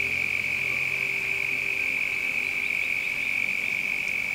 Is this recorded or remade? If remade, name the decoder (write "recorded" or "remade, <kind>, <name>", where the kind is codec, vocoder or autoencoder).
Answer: recorded